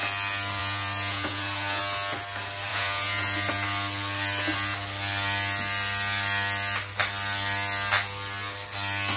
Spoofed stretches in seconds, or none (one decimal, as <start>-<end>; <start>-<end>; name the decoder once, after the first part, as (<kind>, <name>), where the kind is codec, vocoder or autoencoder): 0.6-1.8 (vocoder, Vocos); 2.7-3.5